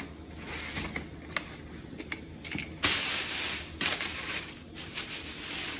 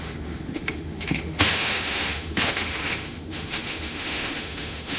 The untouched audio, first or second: first